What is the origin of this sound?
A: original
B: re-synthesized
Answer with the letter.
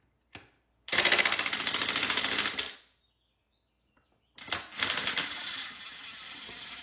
A